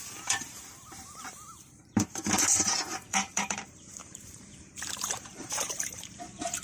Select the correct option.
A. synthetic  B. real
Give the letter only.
A